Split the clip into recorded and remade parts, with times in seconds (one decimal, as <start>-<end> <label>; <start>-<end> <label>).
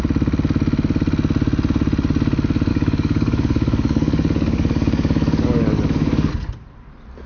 0.0-2.7 recorded; 2.7-6.3 remade; 6.3-7.3 recorded